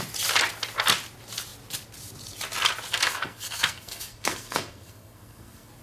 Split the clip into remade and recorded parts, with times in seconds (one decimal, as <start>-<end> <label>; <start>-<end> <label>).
0.0-2.9 recorded; 2.9-5.8 remade